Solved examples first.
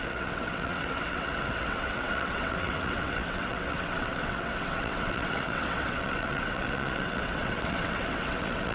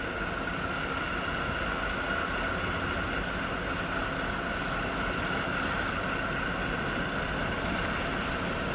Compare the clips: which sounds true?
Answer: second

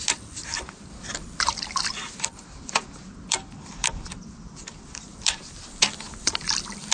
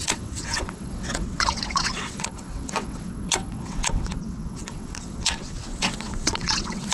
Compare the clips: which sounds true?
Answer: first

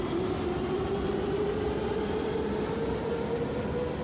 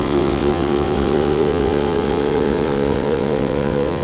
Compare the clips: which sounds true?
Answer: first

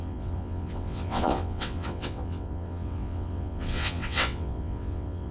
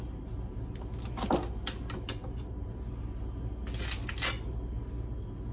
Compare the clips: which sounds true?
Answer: second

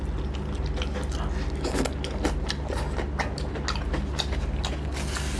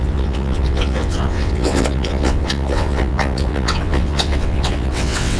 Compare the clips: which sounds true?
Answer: first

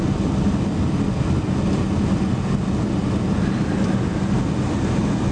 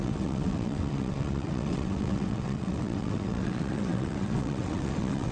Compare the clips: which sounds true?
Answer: first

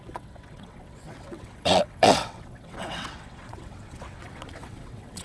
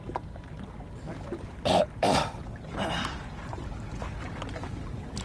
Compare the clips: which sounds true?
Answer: second